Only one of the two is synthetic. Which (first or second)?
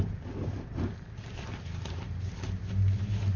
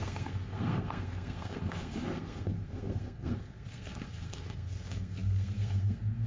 second